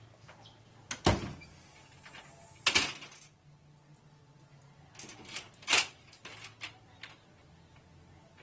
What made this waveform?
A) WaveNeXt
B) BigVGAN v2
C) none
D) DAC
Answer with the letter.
C